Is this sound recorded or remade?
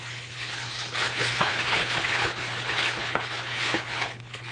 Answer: remade